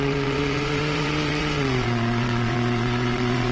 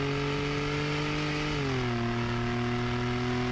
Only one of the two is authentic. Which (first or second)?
second